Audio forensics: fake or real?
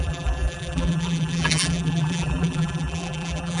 fake